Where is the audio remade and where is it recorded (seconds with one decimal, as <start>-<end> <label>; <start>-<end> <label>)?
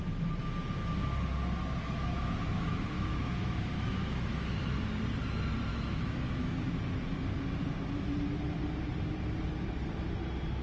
0.0-1.6 recorded; 1.6-4.6 remade; 4.6-5.7 recorded; 5.7-6.6 remade; 6.6-10.6 recorded